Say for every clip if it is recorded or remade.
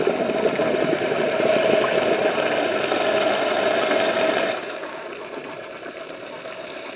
recorded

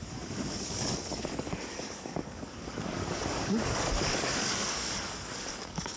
remade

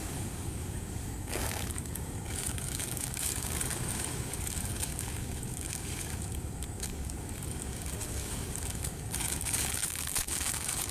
remade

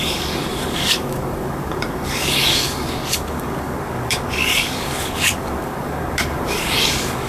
remade